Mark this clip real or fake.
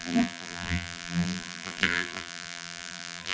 fake